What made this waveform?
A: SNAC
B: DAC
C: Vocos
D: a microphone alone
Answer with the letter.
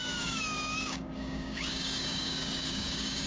B